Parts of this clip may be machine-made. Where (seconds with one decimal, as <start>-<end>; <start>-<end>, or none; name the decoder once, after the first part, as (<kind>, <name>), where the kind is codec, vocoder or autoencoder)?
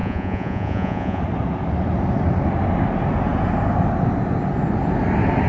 0.0-1.2 (vocoder, Vocos)